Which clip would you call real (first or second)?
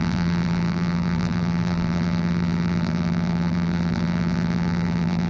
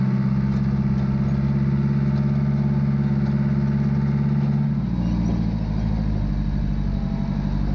second